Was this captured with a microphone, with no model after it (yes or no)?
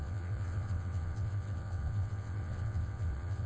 no